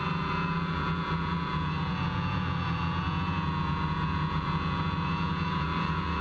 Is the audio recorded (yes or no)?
no